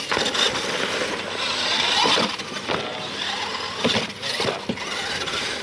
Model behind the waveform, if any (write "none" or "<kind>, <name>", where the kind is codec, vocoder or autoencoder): none